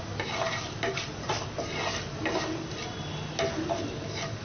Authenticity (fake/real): real